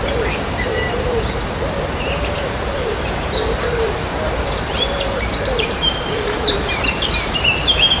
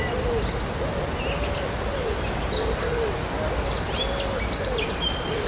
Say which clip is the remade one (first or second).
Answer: first